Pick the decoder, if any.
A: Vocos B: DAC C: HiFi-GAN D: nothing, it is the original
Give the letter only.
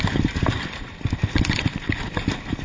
D